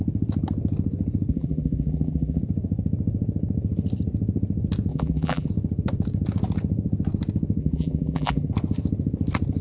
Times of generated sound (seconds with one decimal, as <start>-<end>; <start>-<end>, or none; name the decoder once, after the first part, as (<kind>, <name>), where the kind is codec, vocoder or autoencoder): 1.3-2.4 (vocoder, BigVGAN v2); 4.9-5.5; 7.6-8.5